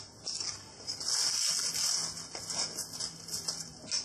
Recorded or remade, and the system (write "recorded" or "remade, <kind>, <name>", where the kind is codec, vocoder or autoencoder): recorded